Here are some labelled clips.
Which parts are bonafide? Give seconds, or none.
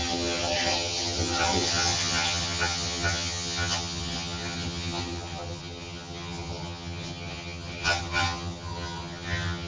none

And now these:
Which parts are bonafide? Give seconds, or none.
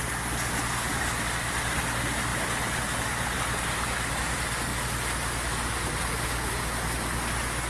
0.0-7.7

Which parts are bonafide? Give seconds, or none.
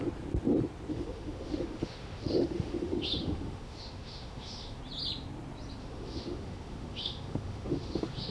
0.0-0.9; 4.8-5.8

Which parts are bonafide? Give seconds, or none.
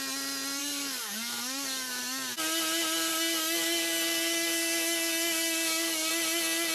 0.0-0.6; 2.0-3.1; 6.1-6.7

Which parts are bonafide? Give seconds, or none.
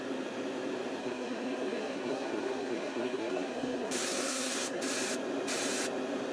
0.0-1.0; 4.8-6.3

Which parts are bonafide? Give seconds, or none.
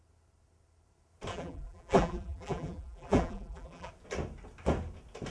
0.0-1.3; 3.9-5.3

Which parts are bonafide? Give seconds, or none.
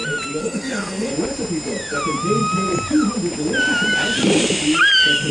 0.0-0.4; 1.1-5.3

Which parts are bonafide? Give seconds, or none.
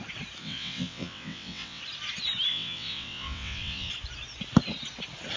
0.0-0.4; 1.8-2.5; 3.9-5.4